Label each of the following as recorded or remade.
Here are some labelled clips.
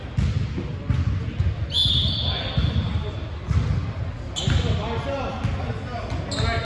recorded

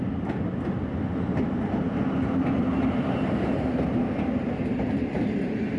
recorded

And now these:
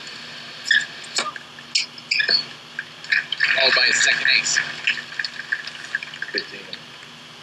recorded